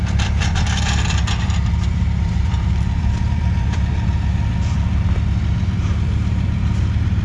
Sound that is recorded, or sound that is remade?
remade